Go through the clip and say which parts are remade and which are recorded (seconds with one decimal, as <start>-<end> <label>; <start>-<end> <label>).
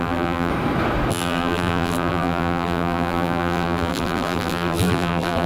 0.0-0.5 remade; 0.5-1.1 recorded; 1.1-5.5 remade